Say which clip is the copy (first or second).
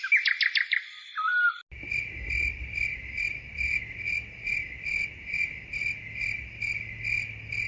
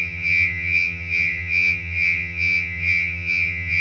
second